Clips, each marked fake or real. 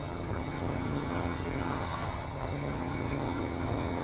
fake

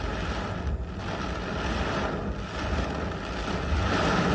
real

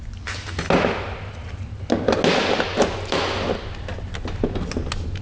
real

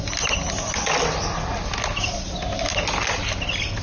real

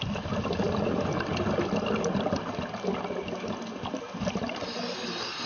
real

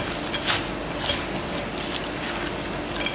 real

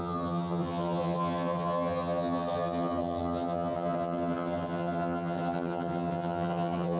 fake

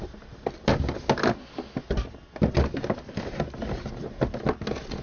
real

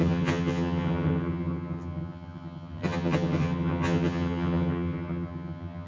fake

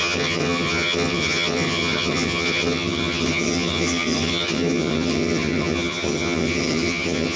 fake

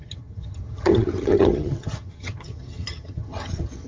fake